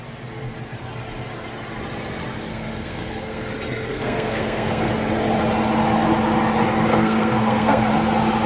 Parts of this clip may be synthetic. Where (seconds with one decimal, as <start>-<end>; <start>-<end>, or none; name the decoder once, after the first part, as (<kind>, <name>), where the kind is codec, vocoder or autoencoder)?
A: 2.5-3.5 (codec, SNAC); 3.9-4.9; 6.9-7.9